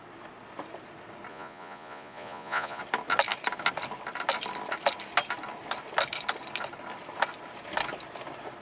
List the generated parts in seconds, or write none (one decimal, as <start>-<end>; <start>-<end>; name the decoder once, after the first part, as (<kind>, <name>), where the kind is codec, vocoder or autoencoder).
1.3-2.8 (vocoder, Vocos)